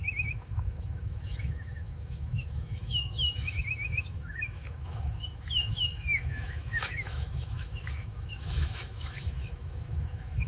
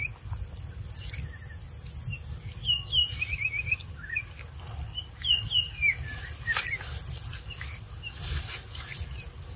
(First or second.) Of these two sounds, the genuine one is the second